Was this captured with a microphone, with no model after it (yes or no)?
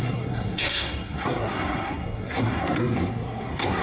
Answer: no